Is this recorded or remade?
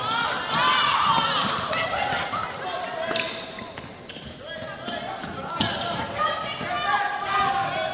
recorded